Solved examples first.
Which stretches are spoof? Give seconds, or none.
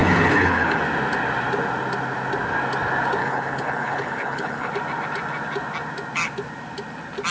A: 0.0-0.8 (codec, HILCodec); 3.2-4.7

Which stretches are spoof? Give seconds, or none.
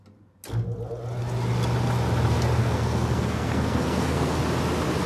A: 2.6-4.4 (codec, SNAC)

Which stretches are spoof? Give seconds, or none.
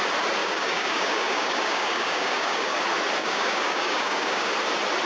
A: 0.4-2.8 (codec, DAC); 3.2-4.5